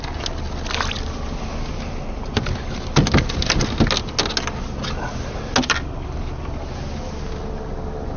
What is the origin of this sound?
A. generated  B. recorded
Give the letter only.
B